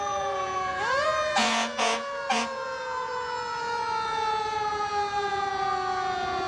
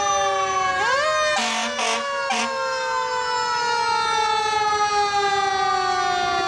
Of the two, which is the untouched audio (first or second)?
second